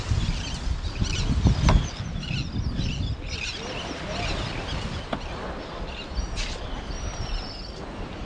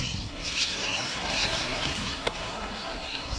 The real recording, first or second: first